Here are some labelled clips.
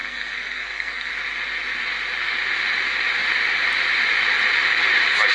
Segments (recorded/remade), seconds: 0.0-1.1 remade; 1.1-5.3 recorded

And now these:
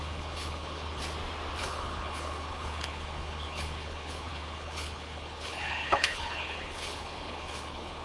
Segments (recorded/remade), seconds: 0.0-1.0 remade; 1.0-1.6 recorded; 1.6-8.0 remade